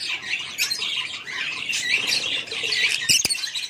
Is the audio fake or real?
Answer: fake